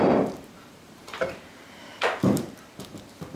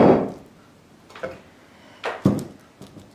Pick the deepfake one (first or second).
first